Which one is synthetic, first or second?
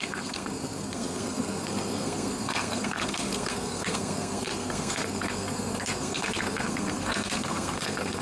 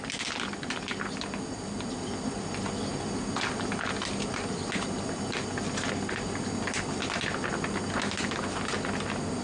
first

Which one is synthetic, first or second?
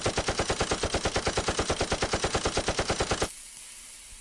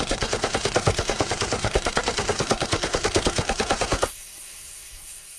second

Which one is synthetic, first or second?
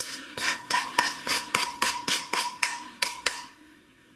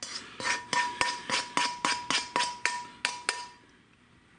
first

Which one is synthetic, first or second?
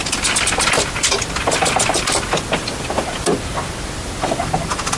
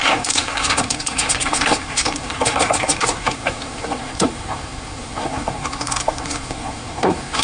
second